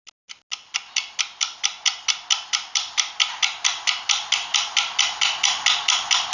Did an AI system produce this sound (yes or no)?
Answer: no